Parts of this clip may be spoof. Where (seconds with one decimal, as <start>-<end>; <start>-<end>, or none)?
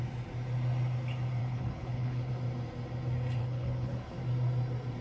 1.4-2.3; 3.4-4.2